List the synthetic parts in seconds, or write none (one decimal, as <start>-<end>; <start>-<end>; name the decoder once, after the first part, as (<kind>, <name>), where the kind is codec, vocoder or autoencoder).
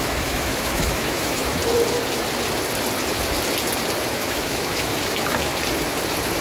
0.0-1.6 (autoencoder, DAC-VAE); 4.1-5.5